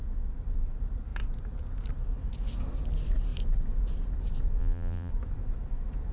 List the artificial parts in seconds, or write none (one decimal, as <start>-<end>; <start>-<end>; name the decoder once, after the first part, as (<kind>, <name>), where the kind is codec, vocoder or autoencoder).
4.6-5.1 (vocoder, BigVGAN v2)